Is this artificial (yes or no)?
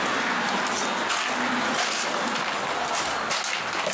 no